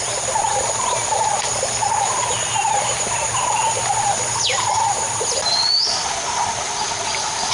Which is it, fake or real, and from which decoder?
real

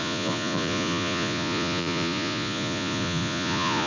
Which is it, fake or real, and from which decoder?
fake, vocoder, Vocos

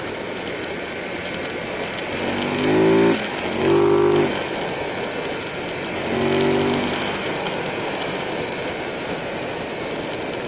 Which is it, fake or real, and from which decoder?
real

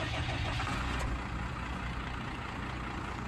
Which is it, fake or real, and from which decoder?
fake, vocoder, Vocos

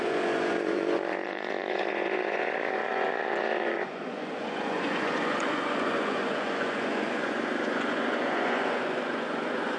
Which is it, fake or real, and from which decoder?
fake, vocoder, Vocos